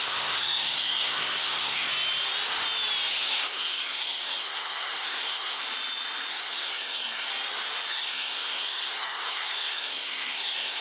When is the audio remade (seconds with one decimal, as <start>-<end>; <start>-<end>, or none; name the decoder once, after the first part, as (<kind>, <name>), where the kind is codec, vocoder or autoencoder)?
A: 0.0-1.9 (codec, SNAC); 3.1-5.6; 6.3-7.3; 7.9-10.8